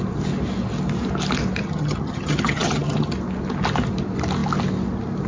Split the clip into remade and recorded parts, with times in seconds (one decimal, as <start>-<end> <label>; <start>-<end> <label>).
0.0-1.6 recorded; 1.6-3.1 remade; 3.1-5.3 recorded